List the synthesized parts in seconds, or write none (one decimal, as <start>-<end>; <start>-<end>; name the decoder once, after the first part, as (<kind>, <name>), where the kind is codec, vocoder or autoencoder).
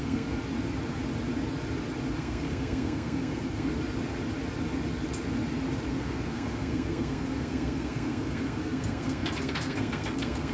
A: 0.0-0.4 (codec, SNAC); 2.2-3.7; 5.9-10.5